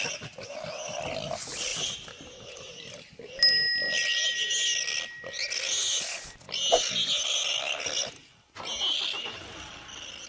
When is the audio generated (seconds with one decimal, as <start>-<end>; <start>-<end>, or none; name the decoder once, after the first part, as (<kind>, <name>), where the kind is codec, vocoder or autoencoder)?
none